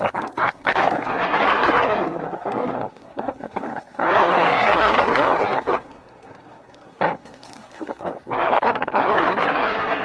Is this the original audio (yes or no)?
no